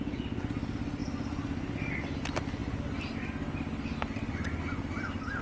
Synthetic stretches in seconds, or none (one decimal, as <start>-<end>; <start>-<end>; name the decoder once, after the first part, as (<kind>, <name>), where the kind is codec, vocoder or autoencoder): none